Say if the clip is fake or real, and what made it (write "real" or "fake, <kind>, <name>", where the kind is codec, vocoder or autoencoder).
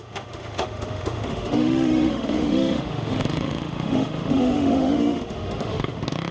fake, autoencoder, DAC-VAE